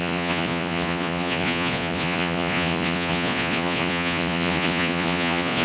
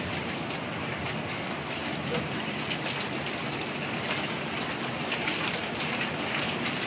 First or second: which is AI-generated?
first